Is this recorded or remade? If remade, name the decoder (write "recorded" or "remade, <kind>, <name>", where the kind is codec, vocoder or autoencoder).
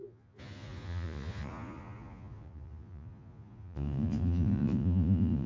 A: remade, vocoder, Vocos